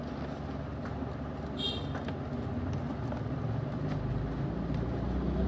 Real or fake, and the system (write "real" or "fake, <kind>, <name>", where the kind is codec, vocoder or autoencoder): real